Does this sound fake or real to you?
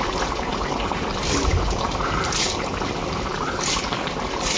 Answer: fake